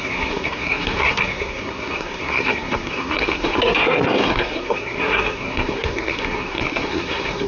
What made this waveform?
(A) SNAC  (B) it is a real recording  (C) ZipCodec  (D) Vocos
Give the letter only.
A